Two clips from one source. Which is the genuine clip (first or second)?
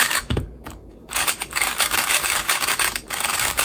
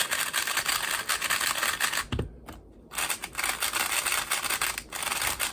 second